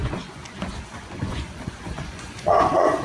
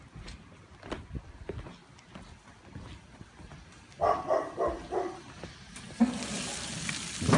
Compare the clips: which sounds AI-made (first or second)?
first